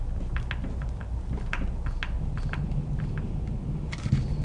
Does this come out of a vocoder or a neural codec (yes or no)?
no